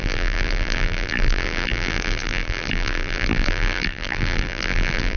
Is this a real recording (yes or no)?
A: no